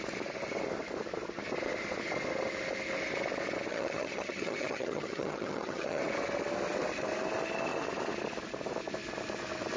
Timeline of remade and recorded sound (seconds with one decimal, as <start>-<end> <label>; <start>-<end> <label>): 0.0-3.7 recorded; 3.7-6.0 remade; 6.0-9.8 recorded